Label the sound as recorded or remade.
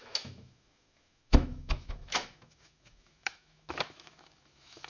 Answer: remade